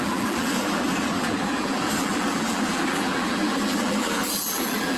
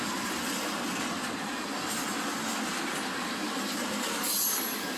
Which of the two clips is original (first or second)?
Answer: second